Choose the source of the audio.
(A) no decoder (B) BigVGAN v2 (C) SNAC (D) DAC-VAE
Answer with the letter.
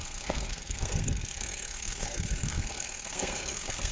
C